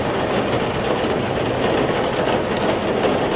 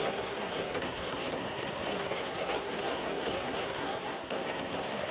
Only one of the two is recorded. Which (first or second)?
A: first